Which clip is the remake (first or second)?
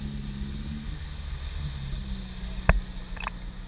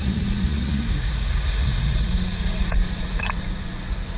second